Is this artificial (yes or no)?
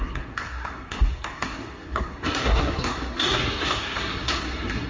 yes